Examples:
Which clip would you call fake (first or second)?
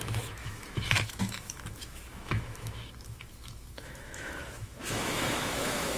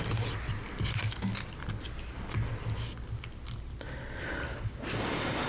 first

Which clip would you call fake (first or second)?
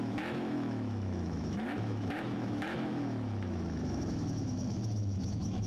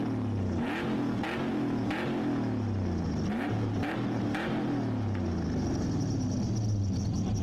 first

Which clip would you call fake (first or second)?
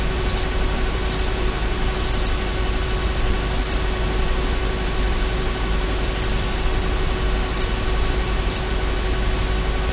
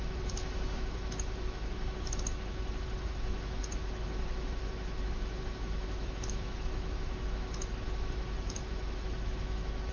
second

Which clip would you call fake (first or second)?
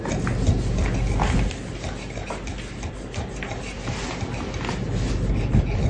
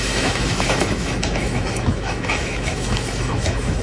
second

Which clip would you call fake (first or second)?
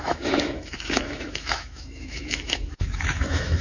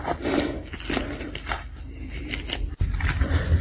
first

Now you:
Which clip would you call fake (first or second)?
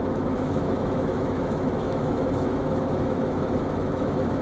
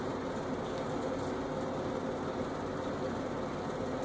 first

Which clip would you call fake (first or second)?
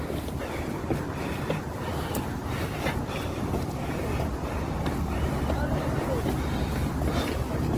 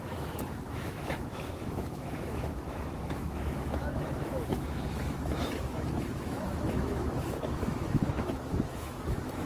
second